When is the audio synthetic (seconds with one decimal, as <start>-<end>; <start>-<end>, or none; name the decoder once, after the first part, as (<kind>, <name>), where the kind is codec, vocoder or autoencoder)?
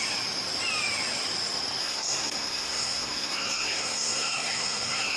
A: 1.8-5.2 (codec, SNAC)